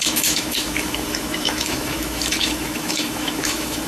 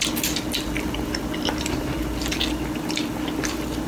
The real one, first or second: second